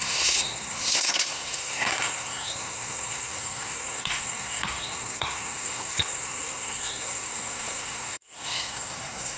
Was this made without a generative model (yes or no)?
no